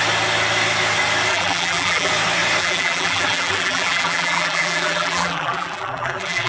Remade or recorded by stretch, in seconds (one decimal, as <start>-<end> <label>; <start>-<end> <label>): 0.0-1.3 recorded; 1.3-2.1 remade; 2.1-2.6 recorded; 2.6-6.5 remade